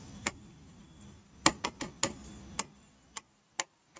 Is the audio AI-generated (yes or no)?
no